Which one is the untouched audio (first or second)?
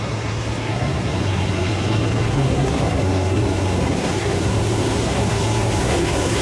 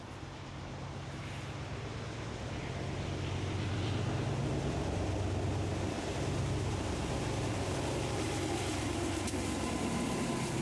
second